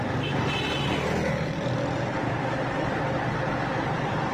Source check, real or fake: real